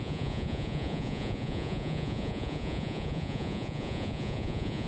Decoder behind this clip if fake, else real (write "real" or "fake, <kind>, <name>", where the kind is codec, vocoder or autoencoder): fake, vocoder, Vocos